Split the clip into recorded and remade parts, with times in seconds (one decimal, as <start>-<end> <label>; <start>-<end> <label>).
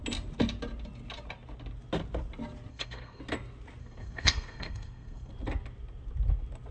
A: 0.0-2.7 recorded; 2.7-3.2 remade; 3.2-3.8 recorded; 3.8-5.3 remade; 5.3-6.7 recorded